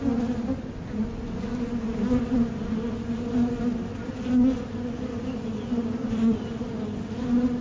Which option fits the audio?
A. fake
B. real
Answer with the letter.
B